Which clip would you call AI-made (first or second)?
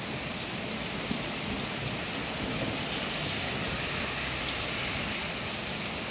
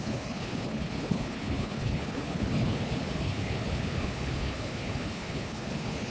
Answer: second